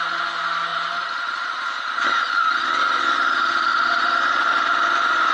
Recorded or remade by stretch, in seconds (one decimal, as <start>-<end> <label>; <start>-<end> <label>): 0.0-0.7 recorded; 0.7-2.2 remade; 2.2-3.7 recorded; 3.7-4.5 remade; 4.5-5.3 recorded